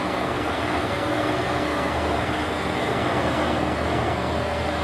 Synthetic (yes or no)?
yes